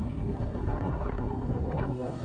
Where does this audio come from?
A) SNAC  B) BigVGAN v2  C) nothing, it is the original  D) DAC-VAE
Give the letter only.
A